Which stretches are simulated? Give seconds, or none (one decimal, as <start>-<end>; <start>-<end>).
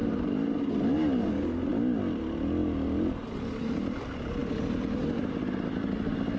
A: none